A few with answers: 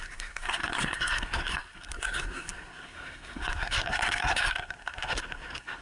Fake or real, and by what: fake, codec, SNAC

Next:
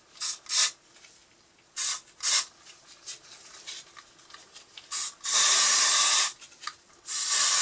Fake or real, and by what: real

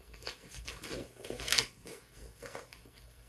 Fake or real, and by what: fake, codec, SNAC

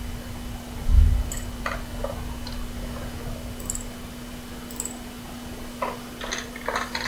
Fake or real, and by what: real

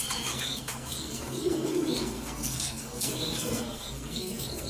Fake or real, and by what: fake, codec, SNAC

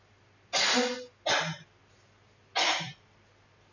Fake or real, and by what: real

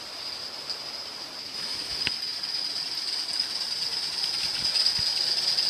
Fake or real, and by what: real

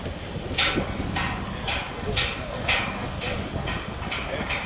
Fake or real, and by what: real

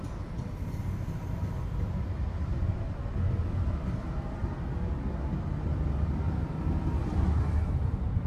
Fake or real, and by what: real